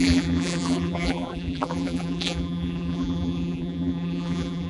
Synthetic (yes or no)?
yes